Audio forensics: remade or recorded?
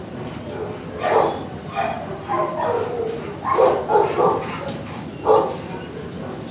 recorded